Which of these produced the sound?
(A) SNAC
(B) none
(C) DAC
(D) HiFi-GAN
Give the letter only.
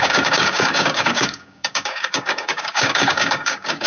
C